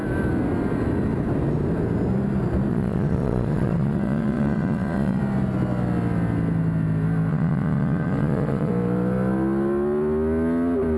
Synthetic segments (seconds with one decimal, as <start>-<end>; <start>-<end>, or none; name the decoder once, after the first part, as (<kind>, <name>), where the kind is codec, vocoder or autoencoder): 2.7-5.2 (vocoder, Vocos); 7.3-8.7